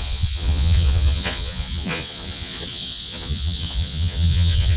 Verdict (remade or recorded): remade